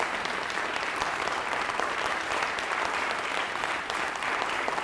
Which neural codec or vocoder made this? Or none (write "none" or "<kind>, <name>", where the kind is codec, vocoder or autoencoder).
vocoder, BigVGAN v2